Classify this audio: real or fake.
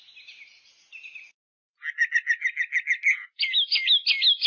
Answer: real